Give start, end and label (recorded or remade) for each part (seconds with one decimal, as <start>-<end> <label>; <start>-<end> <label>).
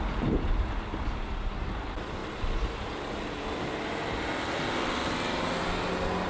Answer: 0.0-6.3 recorded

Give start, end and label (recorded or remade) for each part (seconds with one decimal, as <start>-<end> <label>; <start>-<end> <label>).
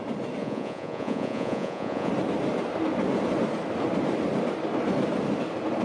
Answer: 0.0-0.4 recorded; 0.4-2.1 remade; 2.1-5.8 recorded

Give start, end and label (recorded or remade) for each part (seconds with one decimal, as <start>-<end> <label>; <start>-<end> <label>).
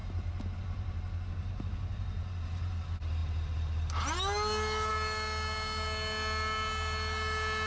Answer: 0.0-1.0 remade; 1.0-1.9 recorded; 1.9-2.6 remade; 2.6-7.7 recorded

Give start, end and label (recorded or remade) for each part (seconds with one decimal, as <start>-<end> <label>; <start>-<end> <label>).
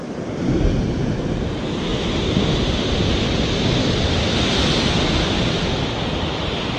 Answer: 0.0-1.9 recorded; 1.9-2.9 remade; 2.9-6.8 recorded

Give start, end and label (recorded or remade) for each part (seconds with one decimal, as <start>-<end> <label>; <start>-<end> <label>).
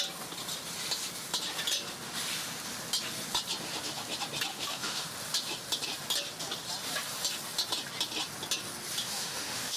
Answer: 0.0-4.5 recorded; 4.5-5.1 remade; 5.1-9.0 recorded; 9.0-9.8 remade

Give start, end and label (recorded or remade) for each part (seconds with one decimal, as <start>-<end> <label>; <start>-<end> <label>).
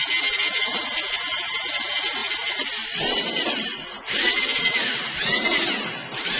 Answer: 0.0-2.2 recorded; 2.2-4.0 remade; 4.0-6.4 recorded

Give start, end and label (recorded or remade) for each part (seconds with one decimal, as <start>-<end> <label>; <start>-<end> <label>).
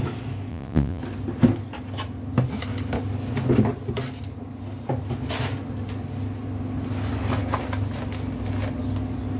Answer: 0.0-0.5 recorded; 0.5-1.0 remade; 1.0-9.4 recorded